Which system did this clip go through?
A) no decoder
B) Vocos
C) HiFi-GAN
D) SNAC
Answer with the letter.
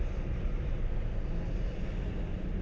A